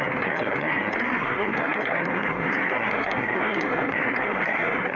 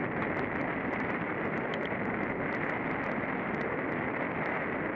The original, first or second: second